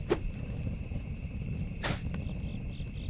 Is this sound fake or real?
real